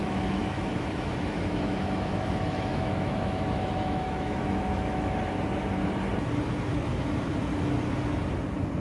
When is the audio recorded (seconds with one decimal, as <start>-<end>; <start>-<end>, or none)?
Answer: 5.2-6.7; 7.3-8.8

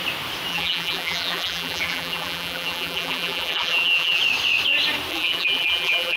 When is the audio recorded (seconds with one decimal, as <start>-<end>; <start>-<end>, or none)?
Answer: 0.0-0.5; 4.2-5.1